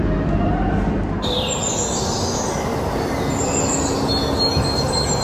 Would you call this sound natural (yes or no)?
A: yes